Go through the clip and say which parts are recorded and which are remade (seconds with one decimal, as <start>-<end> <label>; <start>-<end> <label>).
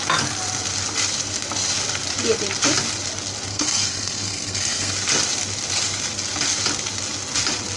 0.0-3.5 recorded; 3.5-4.9 remade; 4.9-7.8 recorded